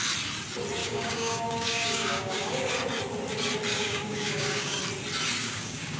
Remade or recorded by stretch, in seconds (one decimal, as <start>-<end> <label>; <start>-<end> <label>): 0.0-0.8 recorded; 0.8-2.7 remade; 2.7-3.7 recorded; 3.7-4.8 remade; 4.8-5.4 recorded; 5.4-6.0 remade